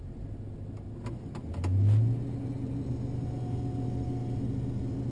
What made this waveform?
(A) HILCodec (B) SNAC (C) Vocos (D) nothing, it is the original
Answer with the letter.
D